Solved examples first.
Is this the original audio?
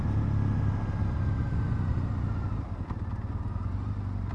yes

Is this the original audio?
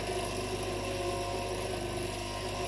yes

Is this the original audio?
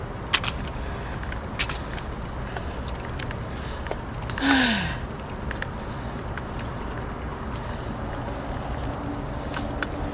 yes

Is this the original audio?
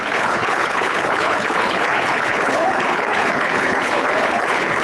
no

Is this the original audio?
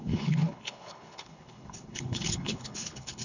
no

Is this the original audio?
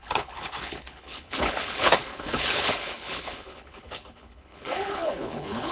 no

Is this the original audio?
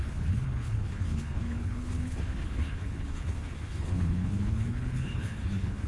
no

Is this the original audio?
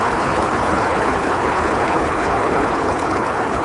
no